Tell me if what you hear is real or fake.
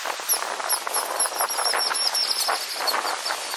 real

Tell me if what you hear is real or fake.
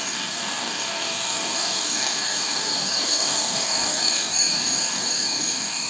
fake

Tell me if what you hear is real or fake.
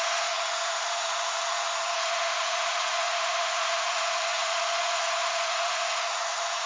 fake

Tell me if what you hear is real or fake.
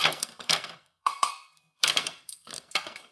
fake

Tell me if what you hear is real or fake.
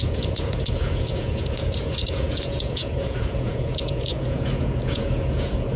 fake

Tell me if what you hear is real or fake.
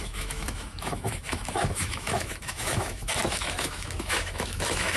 fake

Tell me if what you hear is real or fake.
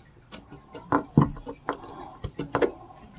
real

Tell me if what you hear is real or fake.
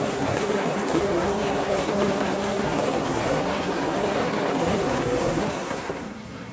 fake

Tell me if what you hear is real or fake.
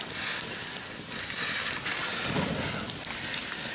real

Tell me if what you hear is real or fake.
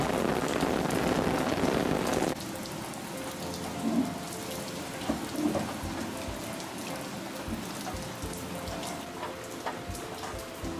real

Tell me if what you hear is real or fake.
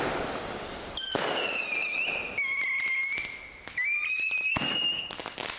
real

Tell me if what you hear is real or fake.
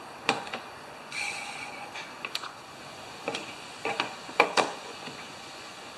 fake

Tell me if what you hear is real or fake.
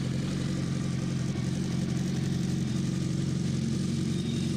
fake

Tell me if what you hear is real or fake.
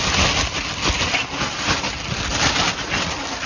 real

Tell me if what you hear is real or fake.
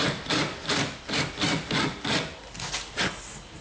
real